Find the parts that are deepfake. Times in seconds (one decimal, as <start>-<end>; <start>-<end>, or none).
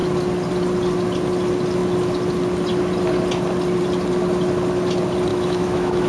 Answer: 5.3-6.1